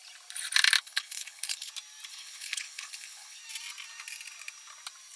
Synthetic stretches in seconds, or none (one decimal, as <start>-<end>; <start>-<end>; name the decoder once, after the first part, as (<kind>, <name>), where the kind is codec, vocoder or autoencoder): 0.8-1.7 (codec, HILCodec); 2.1-3.4